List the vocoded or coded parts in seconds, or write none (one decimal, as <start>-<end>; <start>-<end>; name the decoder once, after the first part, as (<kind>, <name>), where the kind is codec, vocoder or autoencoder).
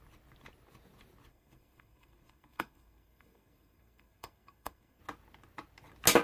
1.3-5.0 (codec, SNAC)